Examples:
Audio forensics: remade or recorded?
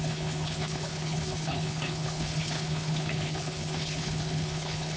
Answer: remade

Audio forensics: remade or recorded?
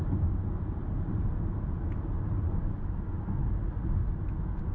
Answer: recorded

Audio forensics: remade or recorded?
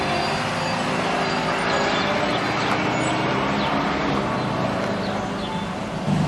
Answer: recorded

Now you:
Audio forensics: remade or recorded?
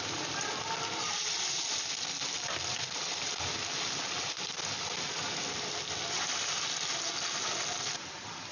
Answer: recorded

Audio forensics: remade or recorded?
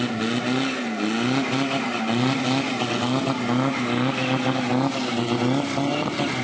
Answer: recorded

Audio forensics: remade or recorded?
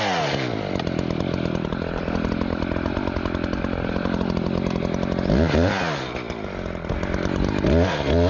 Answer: recorded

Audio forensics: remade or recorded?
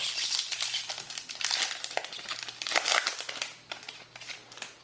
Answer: recorded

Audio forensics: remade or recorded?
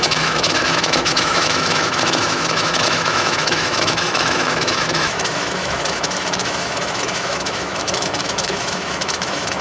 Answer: remade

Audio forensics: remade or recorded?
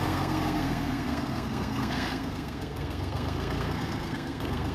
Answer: remade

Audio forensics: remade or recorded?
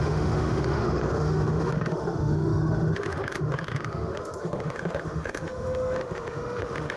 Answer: remade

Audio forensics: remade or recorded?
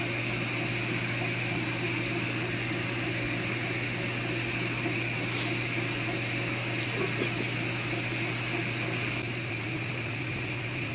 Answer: recorded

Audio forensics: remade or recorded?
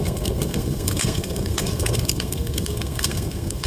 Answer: remade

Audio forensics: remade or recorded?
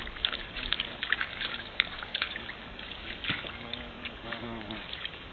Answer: remade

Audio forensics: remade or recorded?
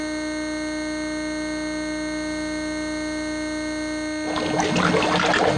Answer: recorded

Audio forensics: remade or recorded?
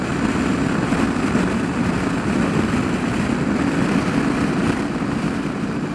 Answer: recorded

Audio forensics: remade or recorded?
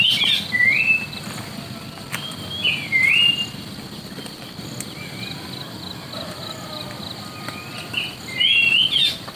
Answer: recorded